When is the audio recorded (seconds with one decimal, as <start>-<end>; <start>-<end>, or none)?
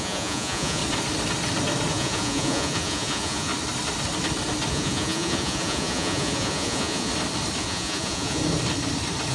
0.8-1.9; 3.5-4.7; 7.1-7.6; 8.4-9.3